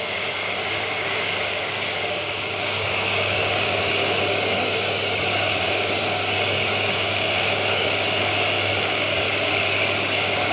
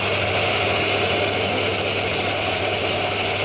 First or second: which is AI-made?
first